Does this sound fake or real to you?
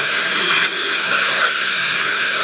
fake